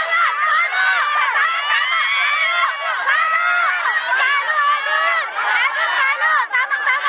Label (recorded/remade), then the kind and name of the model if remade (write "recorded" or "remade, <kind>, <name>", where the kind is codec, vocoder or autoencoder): recorded